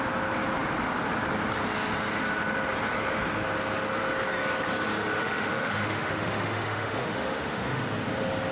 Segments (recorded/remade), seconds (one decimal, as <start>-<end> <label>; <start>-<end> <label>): 0.0-5.2 recorded; 5.2-7.8 remade; 7.8-8.5 recorded